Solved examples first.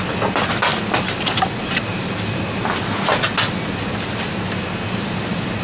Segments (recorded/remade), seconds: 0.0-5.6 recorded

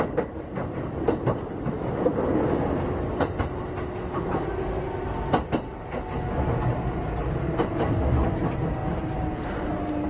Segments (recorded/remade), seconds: 0.0-6.7 recorded; 6.7-8.4 remade; 8.4-8.8 recorded; 8.8-10.1 remade

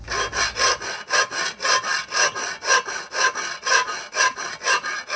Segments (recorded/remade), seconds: 0.0-5.2 recorded

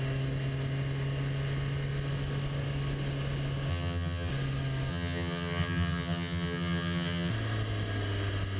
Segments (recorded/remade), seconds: 0.0-3.7 recorded; 3.7-4.3 remade; 4.3-4.9 recorded; 4.9-7.3 remade; 7.3-8.6 recorded

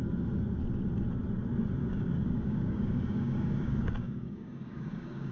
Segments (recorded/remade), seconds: 0.0-1.8 recorded; 1.8-5.3 remade